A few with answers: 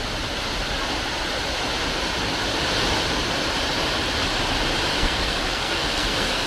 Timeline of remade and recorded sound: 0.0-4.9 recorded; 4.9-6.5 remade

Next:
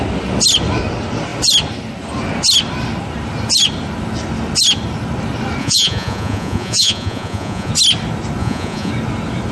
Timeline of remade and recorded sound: 0.0-5.6 recorded; 5.6-7.7 remade; 7.7-8.4 recorded; 8.4-8.9 remade; 8.9-9.5 recorded

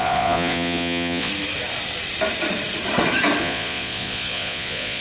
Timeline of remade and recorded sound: 0.0-1.3 remade; 1.3-3.4 recorded; 3.4-5.0 remade

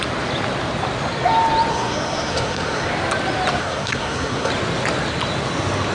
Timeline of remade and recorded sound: 0.0-1.7 recorded; 1.7-2.9 remade; 2.9-3.6 recorded; 3.6-4.5 remade; 4.5-5.9 recorded

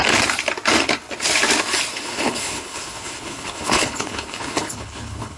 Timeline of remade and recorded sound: 0.0-1.9 recorded; 1.9-5.4 remade